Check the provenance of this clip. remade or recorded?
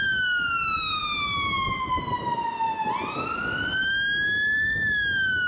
recorded